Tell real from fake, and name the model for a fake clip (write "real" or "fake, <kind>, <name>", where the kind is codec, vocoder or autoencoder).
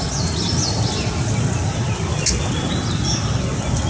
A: real